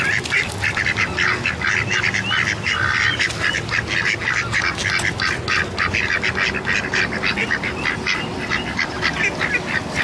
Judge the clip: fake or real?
real